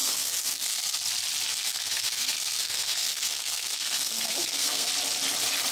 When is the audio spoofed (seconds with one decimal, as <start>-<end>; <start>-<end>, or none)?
0.0-1.0; 1.5-4.9